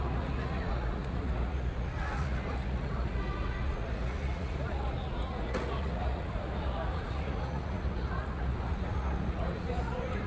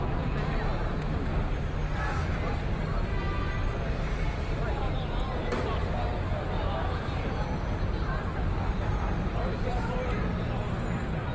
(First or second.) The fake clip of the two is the first